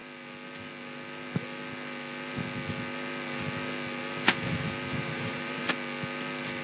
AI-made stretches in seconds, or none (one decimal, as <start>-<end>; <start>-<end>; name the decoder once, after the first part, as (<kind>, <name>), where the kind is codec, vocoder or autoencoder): 4.9-5.7 (vocoder, BigVGAN v2)